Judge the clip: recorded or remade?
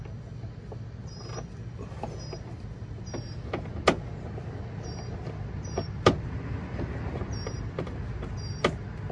recorded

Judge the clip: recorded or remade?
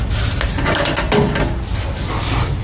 recorded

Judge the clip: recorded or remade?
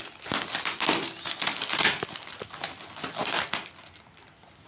recorded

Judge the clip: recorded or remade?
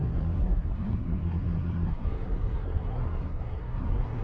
remade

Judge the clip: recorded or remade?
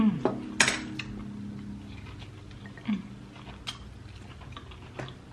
recorded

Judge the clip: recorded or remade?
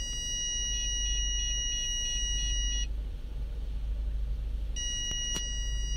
recorded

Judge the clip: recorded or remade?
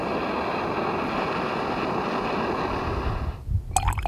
recorded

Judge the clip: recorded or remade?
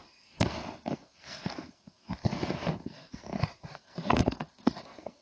remade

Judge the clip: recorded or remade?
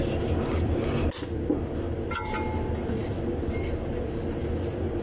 recorded